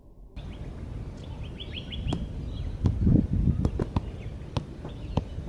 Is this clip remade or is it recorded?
recorded